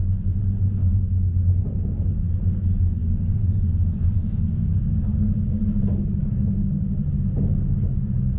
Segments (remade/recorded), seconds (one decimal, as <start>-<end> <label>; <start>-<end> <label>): 0.0-3.0 recorded; 3.0-5.6 remade; 5.6-6.2 recorded; 6.2-7.0 remade; 7.0-8.4 recorded